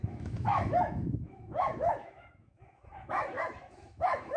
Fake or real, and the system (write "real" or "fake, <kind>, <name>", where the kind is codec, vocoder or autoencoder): fake, autoencoder, DAC-VAE